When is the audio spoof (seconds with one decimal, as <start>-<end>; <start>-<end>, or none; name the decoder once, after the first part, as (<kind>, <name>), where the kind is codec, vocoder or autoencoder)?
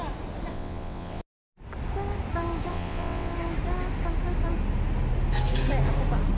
0.5-1.2 (vocoder, WaveNeXt); 2.7-3.3